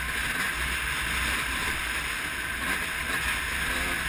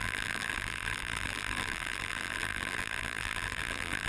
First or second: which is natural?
first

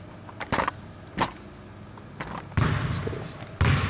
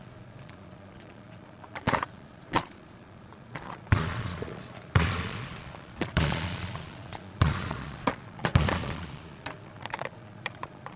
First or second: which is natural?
first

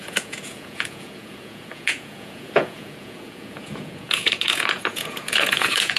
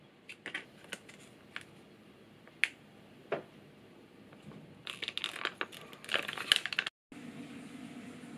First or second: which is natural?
second